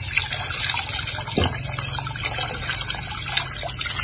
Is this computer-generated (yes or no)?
no